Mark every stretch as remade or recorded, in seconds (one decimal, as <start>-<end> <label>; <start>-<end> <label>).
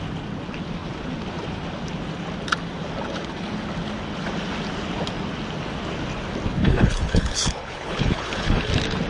0.0-6.6 recorded; 6.6-8.7 remade; 8.7-9.1 recorded